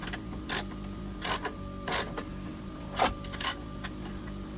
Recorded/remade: recorded